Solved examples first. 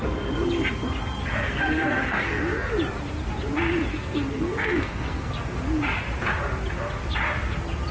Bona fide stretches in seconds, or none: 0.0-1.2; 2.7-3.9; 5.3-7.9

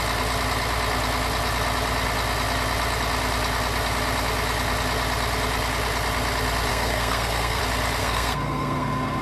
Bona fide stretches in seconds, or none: 0.0-6.7; 7.6-8.0

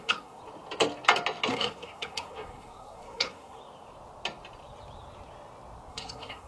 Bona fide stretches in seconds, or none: 0.4-1.5; 3.6-5.9